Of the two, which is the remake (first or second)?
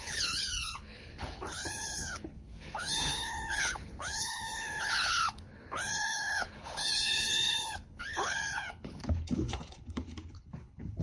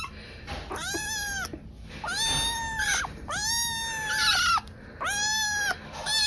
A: first